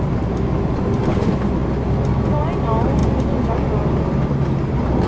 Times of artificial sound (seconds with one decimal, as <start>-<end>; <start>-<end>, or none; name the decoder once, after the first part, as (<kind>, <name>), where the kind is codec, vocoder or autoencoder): none